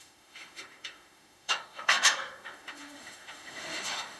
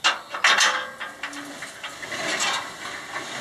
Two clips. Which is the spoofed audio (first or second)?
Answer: first